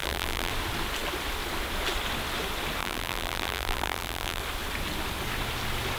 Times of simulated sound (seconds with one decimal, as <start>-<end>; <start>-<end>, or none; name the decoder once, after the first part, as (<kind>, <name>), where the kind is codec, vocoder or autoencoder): 0.0-0.5 (vocoder, BigVGAN v2); 2.8-4.4